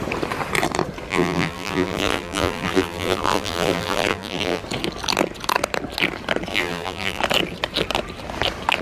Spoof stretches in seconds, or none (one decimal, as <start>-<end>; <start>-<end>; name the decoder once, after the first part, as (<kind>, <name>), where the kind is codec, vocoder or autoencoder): 1.1-4.6 (vocoder, BigVGAN v2); 6.5-7.2